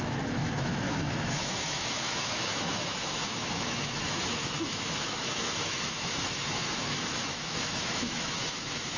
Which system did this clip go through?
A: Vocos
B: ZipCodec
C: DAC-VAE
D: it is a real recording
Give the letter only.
C